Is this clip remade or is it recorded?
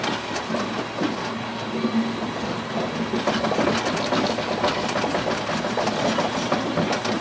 recorded